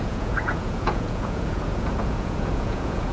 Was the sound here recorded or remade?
remade